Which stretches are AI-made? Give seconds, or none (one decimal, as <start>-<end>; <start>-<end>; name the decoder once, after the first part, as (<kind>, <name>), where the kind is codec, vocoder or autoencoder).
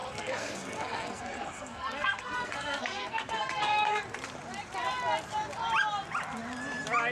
0.0-4.0 (codec, SNAC)